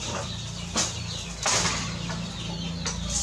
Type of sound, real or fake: real